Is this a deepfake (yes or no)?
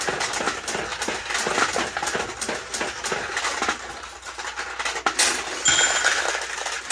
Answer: no